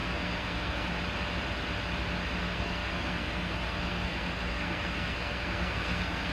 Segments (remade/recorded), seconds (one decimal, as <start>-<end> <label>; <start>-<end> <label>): 0.0-0.9 remade; 0.9-2.4 recorded; 2.4-6.3 remade